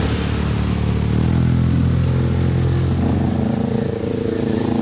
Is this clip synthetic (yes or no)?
no